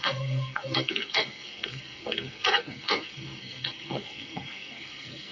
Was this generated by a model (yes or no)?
yes